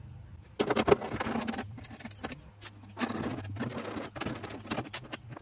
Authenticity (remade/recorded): recorded